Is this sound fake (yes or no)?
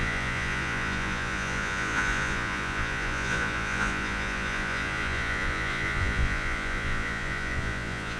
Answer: yes